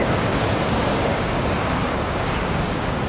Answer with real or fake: fake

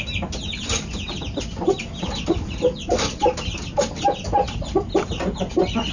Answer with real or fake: real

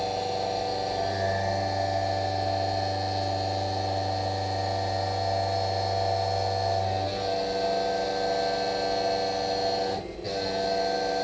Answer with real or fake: real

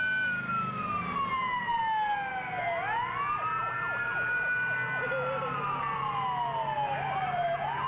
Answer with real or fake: real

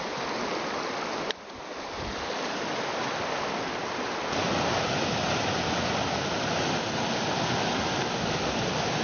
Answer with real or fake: real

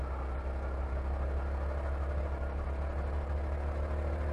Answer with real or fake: real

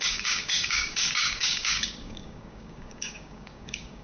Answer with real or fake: fake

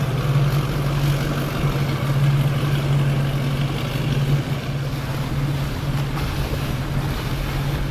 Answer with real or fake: real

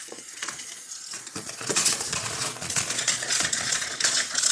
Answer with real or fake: fake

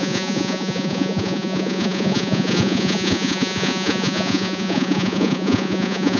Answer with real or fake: fake